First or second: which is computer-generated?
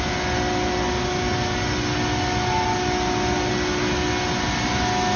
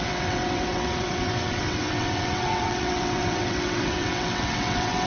second